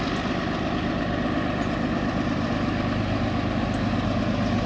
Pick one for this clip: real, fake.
real